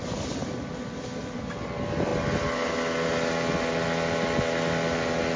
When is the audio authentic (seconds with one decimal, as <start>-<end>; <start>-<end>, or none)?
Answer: 0.0-5.4